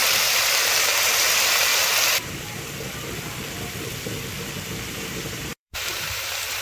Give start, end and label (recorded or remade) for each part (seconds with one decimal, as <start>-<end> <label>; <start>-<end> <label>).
0.0-0.8 recorded; 0.8-1.7 remade; 1.7-4.9 recorded; 4.9-6.6 remade